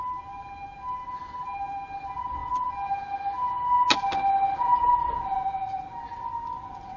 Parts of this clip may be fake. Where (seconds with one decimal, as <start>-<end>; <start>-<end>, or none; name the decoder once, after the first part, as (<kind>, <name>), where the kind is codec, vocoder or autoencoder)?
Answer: none